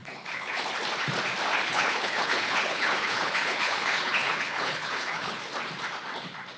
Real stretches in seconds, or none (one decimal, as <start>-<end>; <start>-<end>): 0.6-1.5; 5.4-6.6